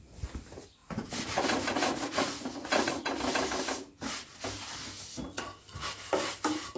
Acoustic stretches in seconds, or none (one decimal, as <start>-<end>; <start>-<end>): 0.0-0.8; 3.1-6.8